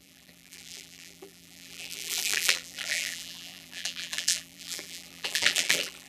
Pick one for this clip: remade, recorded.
remade